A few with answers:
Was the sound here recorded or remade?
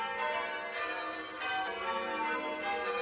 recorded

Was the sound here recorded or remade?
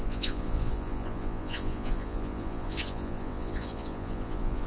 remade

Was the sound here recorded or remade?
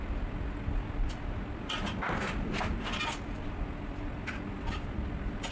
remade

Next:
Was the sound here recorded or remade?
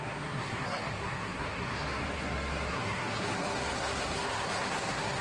remade